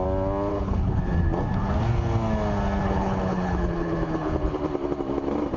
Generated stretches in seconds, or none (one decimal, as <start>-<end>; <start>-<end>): 0.5-1.0; 2.8-4.6